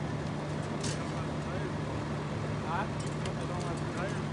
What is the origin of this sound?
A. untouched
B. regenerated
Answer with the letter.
A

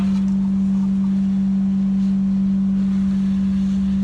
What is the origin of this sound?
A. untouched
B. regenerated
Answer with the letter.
A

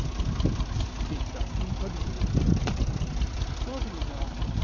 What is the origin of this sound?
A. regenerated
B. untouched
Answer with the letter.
B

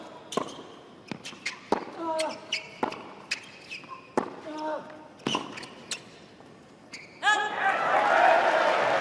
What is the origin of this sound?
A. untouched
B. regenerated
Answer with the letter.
A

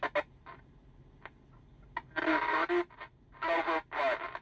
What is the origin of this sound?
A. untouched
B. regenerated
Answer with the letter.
A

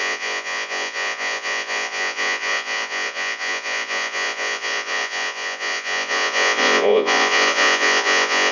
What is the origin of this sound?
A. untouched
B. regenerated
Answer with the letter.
B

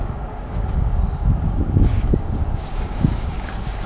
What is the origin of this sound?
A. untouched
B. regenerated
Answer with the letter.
B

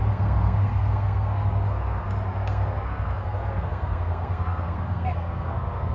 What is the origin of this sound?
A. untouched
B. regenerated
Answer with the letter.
B